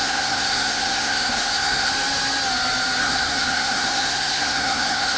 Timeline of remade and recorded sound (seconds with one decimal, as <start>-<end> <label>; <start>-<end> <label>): 0.0-1.9 remade; 1.9-3.0 recorded; 3.0-5.2 remade